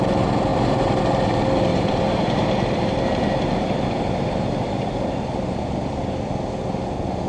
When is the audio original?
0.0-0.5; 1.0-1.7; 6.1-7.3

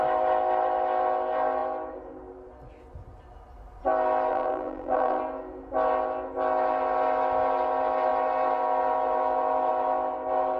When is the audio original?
0.0-4.3; 5.2-10.6

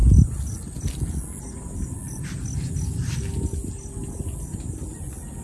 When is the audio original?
0.0-5.4